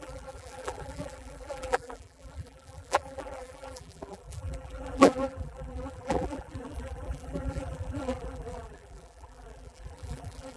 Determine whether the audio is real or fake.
fake